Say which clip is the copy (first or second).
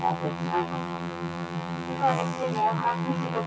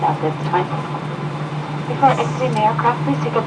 first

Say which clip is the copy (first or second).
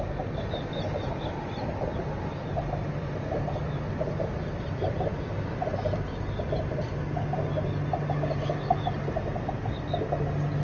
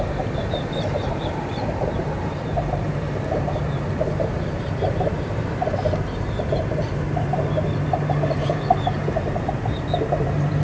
second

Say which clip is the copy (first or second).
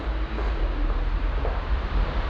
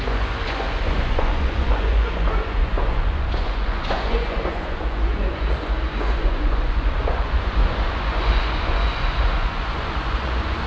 second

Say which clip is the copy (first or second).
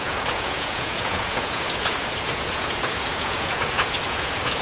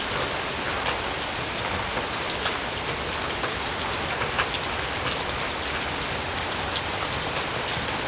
first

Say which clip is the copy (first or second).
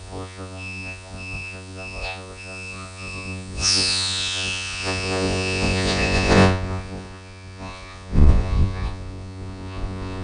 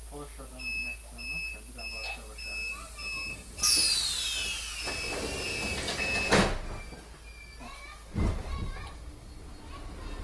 first